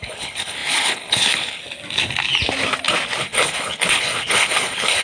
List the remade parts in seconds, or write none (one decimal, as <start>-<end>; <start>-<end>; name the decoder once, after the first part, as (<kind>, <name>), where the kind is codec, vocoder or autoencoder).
0.0-1.6 (codec, HILCodec); 3.2-5.0